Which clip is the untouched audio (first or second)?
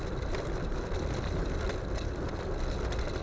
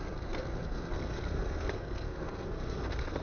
first